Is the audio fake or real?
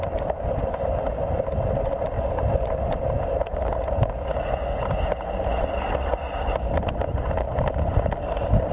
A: real